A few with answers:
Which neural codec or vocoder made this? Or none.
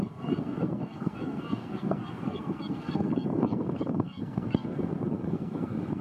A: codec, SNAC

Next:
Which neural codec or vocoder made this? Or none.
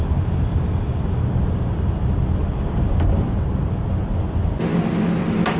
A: none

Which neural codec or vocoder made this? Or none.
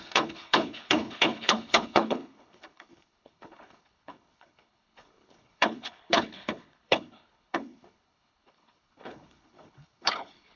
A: codec, HILCodec